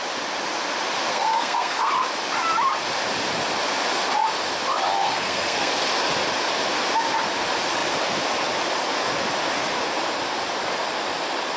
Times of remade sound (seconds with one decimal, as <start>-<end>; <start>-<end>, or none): 1.1-1.9; 5.0-5.7